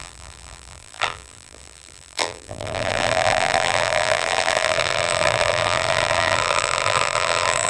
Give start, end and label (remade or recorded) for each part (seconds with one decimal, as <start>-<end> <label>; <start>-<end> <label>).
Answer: 0.0-7.7 remade